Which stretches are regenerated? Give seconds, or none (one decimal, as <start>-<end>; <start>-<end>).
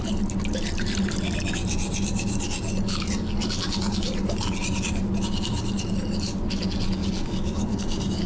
7.0-8.3